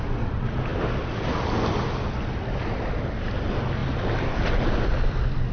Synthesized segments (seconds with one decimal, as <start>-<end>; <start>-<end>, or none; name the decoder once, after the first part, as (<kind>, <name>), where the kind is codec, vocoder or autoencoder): none